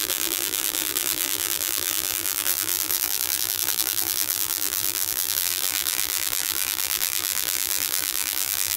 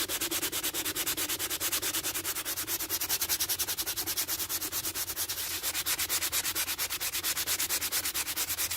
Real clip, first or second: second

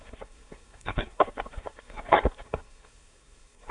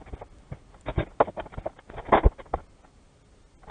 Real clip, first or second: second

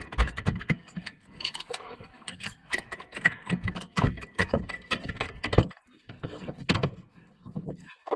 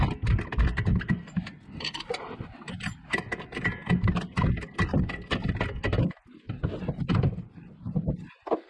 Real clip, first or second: second